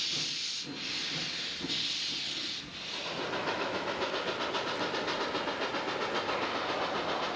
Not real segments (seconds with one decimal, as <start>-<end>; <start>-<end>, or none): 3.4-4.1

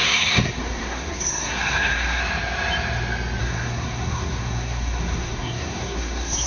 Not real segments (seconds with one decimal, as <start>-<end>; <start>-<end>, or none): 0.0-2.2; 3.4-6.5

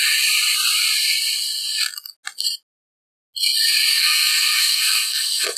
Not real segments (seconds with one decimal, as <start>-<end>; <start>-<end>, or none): 3.9-5.6

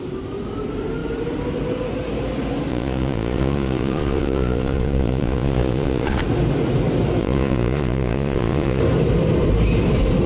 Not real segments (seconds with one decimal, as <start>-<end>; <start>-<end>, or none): 2.7-6.2; 7.2-8.8

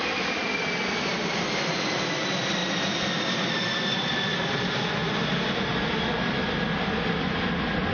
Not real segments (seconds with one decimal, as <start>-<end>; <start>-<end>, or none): none

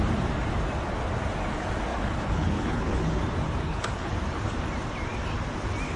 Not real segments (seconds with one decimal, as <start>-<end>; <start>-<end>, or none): 1.9-3.2; 3.6-4.1

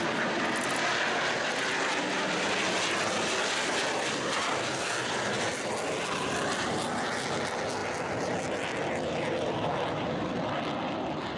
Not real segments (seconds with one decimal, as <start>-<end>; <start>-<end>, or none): none